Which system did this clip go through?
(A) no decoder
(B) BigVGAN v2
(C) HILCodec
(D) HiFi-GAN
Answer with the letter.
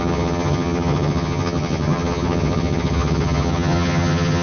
D